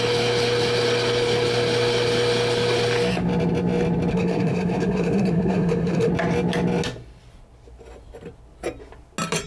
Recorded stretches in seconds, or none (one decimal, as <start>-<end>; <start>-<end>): 0.0-4.1; 6.1-9.5